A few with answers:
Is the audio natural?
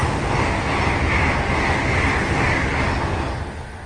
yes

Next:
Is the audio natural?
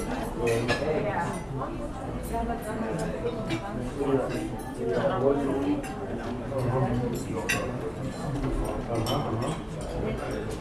yes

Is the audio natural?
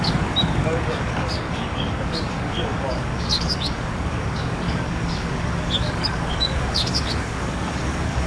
no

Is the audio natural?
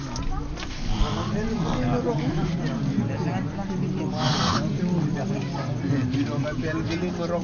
yes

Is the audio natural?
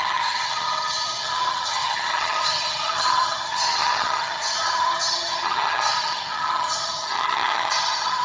no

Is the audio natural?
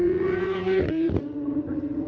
no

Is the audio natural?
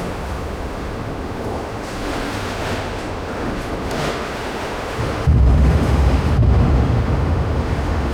no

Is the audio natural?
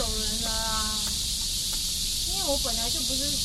yes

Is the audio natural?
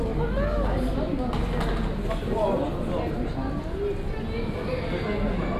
yes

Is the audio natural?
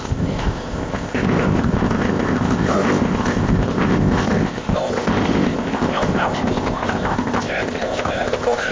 no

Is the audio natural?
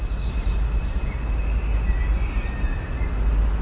yes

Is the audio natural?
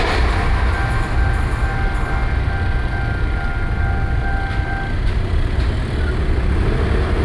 yes